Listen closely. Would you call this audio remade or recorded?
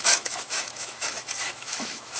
remade